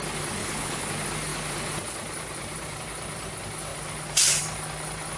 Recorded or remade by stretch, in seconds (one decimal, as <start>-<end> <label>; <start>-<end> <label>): 0.0-0.4 recorded; 0.4-0.9 remade; 0.9-5.2 recorded